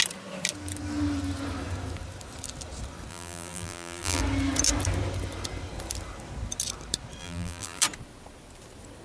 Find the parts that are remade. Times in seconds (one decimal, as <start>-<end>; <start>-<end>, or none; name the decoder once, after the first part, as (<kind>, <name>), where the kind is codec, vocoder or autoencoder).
3.1-4.2 (vocoder, BigVGAN v2); 7.2-7.8